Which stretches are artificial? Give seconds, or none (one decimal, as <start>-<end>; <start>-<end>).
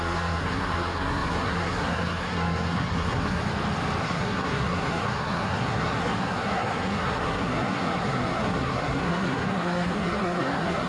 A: 0.0-3.4; 4.0-10.9